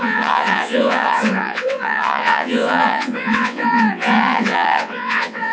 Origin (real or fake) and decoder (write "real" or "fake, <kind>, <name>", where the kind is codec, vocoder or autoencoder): fake, vocoder, WaveNeXt